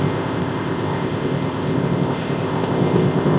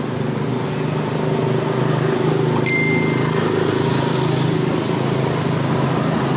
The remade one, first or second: first